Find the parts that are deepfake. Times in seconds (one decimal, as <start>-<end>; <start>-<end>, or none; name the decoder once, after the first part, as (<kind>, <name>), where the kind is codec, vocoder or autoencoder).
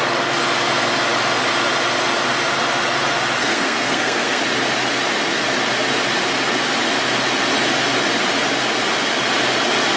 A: 3.4-4.4 (codec, SNAC)